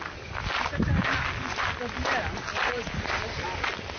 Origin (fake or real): real